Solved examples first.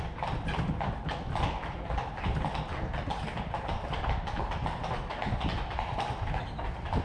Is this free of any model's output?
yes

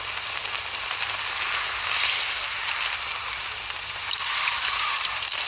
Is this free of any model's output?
yes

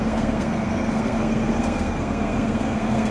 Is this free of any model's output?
no